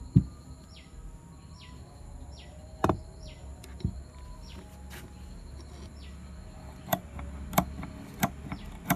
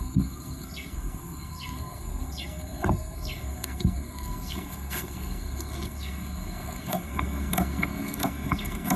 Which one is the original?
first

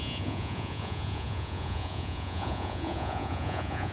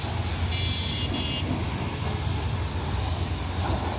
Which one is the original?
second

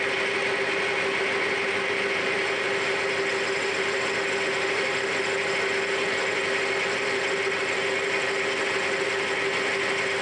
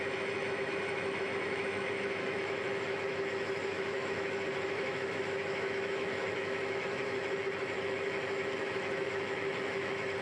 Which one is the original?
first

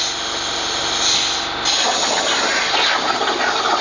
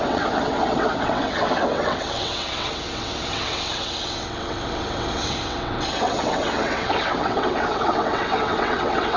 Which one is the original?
first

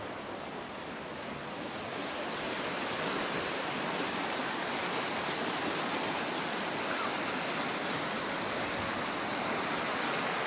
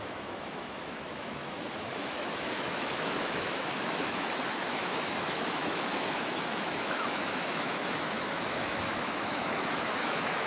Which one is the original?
first